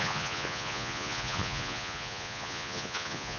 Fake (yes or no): yes